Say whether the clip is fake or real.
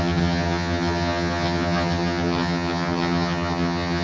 fake